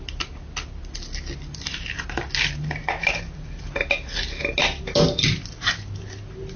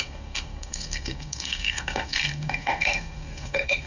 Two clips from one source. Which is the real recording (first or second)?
first